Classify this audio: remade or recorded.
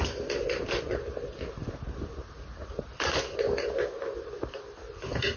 recorded